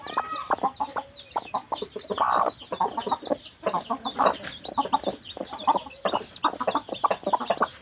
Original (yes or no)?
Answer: yes